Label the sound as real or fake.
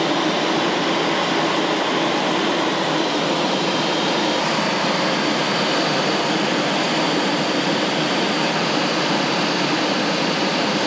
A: real